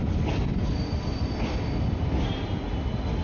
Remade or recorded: recorded